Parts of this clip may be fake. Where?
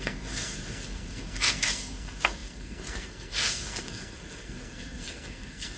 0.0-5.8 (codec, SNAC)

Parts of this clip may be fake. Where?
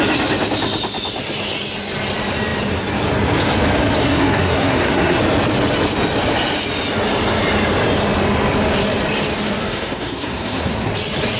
4.0-5.2 (codec, SNAC); 9.6-10.9